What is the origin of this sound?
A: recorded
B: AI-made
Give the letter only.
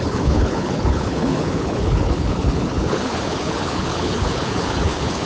B